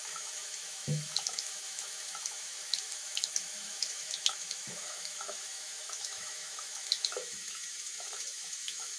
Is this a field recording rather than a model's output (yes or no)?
no